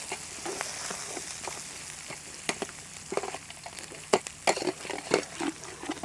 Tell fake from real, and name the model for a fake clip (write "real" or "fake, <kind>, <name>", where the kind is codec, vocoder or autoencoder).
real